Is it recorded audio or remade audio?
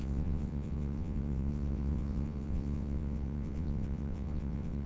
remade